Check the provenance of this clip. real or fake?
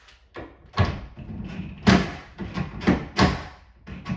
real